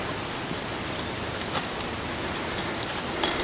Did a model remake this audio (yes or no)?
no